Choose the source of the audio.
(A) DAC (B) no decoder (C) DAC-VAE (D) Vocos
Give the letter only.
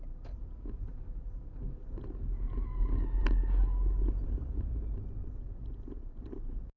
B